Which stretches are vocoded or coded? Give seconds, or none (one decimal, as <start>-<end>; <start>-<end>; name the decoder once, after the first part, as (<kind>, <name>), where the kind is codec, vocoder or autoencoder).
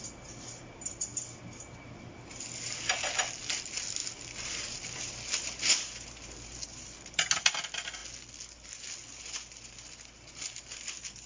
none